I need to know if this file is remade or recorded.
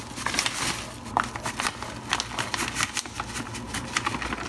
recorded